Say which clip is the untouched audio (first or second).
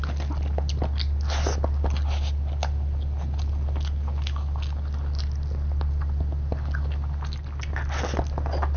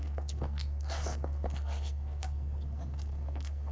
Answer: first